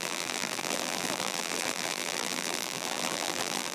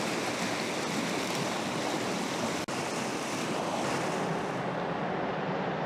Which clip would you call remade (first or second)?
first